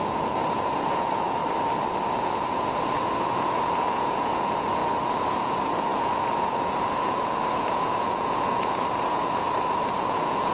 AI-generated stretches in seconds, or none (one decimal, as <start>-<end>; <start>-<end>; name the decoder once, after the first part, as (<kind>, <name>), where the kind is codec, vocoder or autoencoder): 0.0-1.4 (vocoder, Vocos); 2.1-4.8; 5.3-10.5